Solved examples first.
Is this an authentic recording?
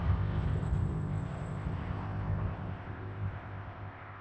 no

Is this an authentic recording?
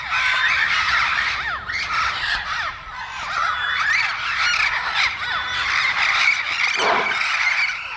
yes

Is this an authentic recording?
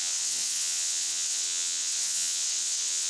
no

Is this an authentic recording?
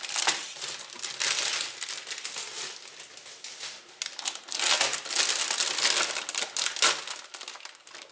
yes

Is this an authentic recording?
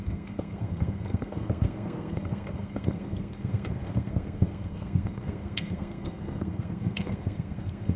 no